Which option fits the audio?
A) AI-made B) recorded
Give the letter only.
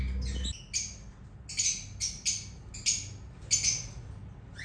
B